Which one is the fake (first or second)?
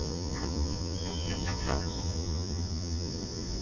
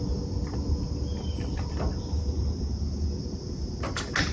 first